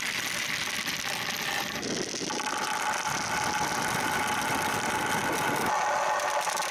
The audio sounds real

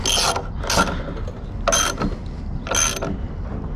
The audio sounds real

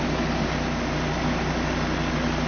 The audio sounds real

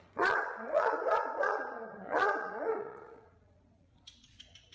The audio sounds fake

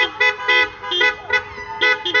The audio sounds real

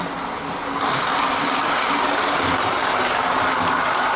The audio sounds real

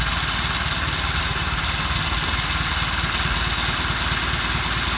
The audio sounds real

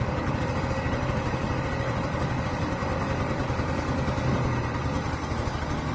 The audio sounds real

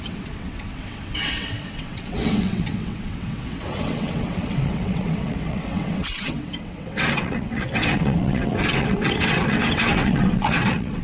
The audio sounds fake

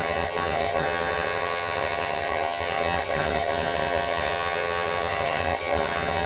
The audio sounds fake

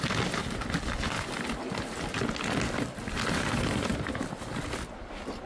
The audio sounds real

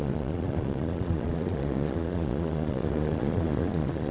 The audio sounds fake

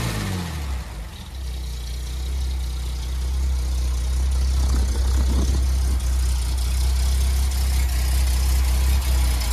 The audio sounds real